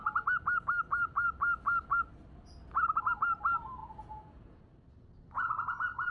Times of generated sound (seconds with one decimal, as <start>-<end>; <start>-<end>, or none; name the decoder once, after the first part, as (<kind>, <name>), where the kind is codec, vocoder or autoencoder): 3.8-4.6 (vocoder, Vocos)